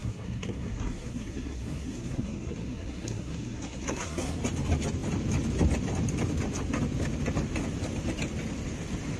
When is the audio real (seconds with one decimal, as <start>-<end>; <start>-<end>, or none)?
4.4-9.2